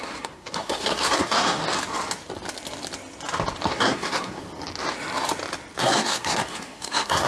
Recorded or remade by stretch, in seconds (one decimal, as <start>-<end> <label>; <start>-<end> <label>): 0.0-1.6 remade; 1.6-3.7 recorded; 3.7-4.4 remade; 4.4-5.8 recorded; 5.8-7.3 remade